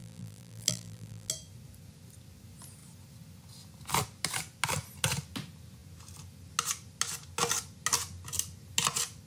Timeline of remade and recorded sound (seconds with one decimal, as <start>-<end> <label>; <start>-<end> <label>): 0.0-1.3 remade; 1.3-9.3 recorded